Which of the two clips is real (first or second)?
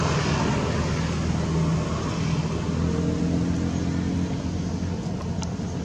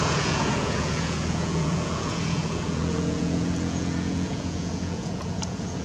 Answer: first